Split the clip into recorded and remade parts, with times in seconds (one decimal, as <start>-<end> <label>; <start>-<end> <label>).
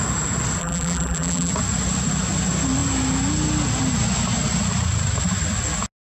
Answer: 0.0-0.6 recorded; 0.6-1.5 remade; 1.5-6.0 recorded